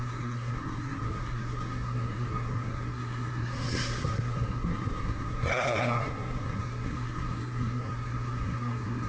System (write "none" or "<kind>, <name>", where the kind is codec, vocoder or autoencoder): codec, SNAC